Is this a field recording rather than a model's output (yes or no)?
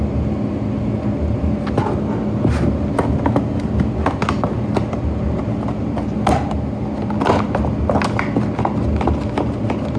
yes